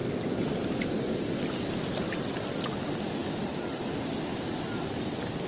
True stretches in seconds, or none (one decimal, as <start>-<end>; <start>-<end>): none